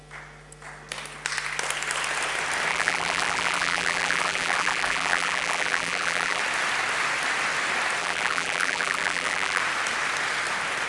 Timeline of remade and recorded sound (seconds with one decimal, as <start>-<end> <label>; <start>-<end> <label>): 0.0-2.7 recorded; 2.7-6.4 remade; 6.4-8.0 recorded; 8.0-9.6 remade; 9.6-10.9 recorded